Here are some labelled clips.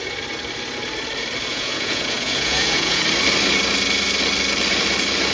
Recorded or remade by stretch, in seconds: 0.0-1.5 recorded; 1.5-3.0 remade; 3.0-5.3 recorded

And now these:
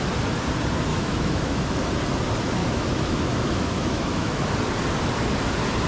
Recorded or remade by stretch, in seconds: 0.0-0.9 recorded; 0.9-1.7 remade; 1.7-2.6 recorded; 2.6-4.4 remade; 4.4-5.9 recorded

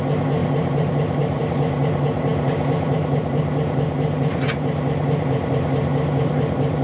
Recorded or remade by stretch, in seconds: 0.0-6.8 remade